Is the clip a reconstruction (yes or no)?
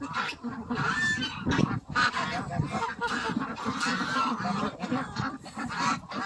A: no